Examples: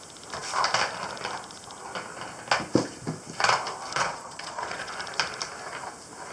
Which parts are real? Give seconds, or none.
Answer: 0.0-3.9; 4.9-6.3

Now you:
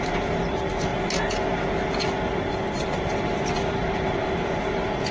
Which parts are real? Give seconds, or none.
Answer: 0.9-2.8

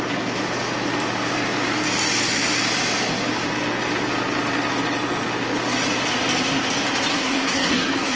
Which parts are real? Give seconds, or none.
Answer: 0.0-7.1

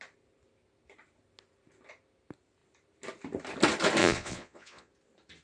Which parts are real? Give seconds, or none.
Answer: 0.0-4.0; 4.9-5.4

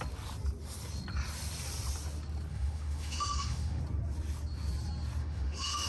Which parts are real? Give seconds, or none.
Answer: 0.0-2.5; 3.8-5.2

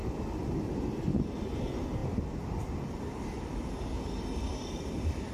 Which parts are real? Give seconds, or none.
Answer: 0.0-5.3

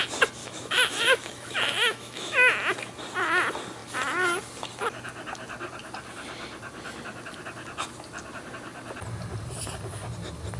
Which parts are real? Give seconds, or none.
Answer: 0.0-0.4; 2.5-10.6